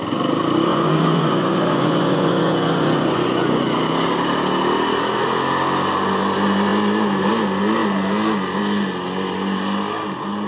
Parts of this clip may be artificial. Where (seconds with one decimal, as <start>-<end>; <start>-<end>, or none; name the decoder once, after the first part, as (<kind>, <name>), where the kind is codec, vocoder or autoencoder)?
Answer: 0.7-3.8 (vocoder, Vocos)

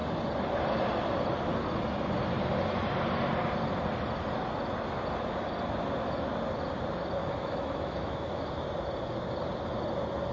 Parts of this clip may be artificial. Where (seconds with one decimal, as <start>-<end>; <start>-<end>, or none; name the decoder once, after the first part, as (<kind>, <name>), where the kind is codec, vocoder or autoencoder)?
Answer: 7.2-8.4 (autoencoder, DAC-VAE)

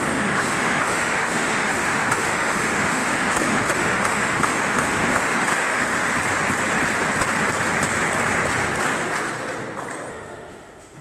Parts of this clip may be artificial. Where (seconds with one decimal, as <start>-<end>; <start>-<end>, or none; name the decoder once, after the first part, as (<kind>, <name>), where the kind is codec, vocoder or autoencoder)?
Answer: 0.0-6.1 (autoencoder, DAC-VAE); 10.1-11.0

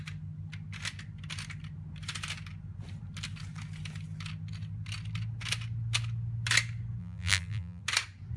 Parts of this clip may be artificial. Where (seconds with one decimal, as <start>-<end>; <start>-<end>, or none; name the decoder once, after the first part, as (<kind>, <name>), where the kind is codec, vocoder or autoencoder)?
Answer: 7.0-7.8 (vocoder, BigVGAN v2)

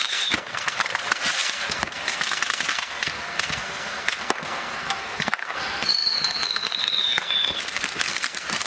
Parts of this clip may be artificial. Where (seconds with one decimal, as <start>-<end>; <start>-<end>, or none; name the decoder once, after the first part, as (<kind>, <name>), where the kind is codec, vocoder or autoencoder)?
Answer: 0.0-8.7 (codec, SNAC)

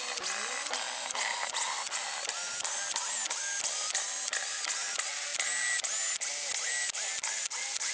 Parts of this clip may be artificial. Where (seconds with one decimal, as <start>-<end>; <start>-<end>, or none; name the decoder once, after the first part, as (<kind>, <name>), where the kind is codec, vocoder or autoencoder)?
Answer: none

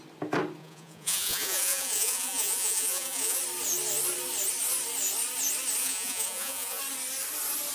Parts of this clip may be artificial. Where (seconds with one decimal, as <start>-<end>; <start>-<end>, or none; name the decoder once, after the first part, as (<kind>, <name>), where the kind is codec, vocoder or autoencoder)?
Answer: 0.6-3.4 (vocoder, Vocos); 5.8-6.8